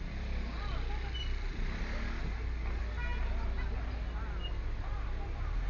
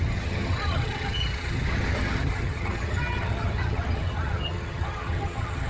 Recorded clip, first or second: first